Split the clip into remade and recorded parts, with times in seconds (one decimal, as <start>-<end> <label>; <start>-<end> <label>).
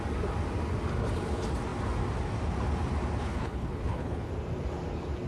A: 0.0-3.2 recorded; 3.2-4.3 remade; 4.3-5.3 recorded